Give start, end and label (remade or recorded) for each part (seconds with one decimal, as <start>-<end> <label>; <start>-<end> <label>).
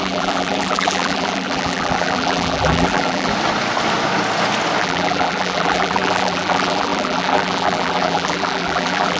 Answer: 0.0-3.3 remade; 3.3-4.8 recorded; 4.8-9.2 remade